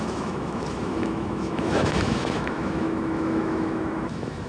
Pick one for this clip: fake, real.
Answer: fake